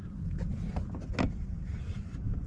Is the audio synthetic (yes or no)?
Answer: no